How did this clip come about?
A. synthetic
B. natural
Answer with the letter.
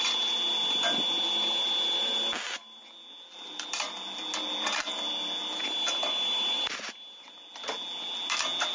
B